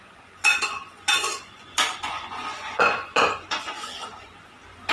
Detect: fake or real fake